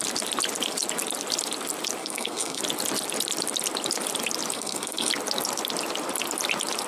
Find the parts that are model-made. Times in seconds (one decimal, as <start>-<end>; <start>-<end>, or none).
2.0-2.6; 4.5-5.1